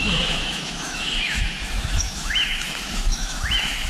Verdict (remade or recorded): remade